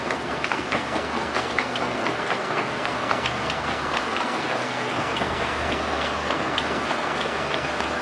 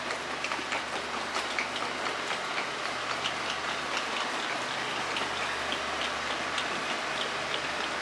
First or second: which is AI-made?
first